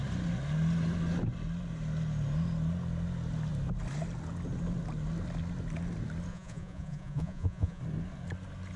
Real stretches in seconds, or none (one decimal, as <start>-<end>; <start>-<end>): 0.0-6.3; 7.8-8.8